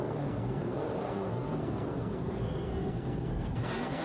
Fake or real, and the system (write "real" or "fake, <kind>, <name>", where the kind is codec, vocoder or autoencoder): fake, codec, SNAC